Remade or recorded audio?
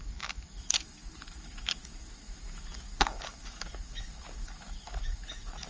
remade